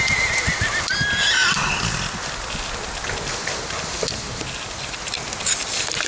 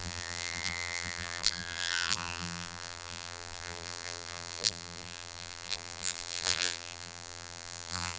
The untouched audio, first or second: first